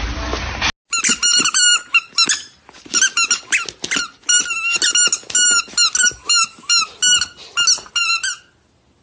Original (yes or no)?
yes